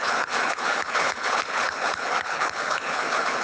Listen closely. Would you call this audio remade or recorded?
remade